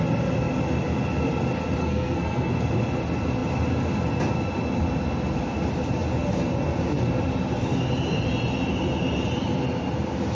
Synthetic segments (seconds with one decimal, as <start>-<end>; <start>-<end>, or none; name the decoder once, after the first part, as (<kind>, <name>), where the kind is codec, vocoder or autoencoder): 1.8-2.5 (codec, SNAC)